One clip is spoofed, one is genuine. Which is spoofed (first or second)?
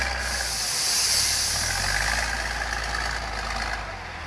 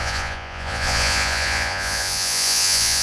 second